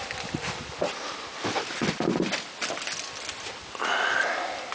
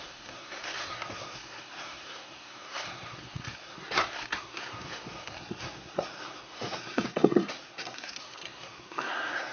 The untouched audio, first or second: first